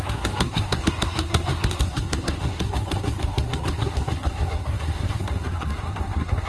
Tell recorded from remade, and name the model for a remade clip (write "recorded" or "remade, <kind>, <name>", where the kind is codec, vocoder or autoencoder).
remade, codec, SNAC